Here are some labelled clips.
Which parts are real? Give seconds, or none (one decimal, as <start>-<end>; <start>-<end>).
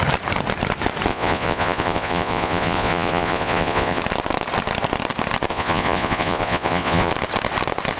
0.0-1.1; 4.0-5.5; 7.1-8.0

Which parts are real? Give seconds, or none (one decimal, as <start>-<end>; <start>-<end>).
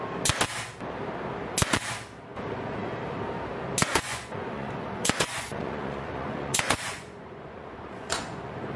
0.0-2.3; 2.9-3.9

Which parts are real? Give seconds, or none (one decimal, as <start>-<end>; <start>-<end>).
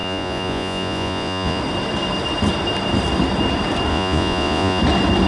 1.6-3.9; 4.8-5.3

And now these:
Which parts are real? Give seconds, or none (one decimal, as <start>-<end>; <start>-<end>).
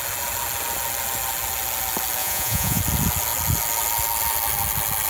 0.0-2.2; 2.8-5.1